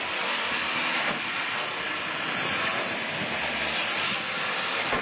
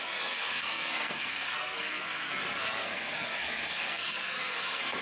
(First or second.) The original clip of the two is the first